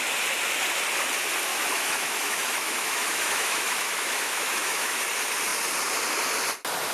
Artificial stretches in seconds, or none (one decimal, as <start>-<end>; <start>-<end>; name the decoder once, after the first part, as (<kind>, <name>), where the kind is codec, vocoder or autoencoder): 1.5-5.0 (autoencoder, DAC-VAE)